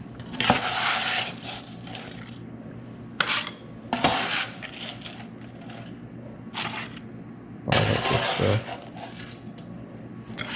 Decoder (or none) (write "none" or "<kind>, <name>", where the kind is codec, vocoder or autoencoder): none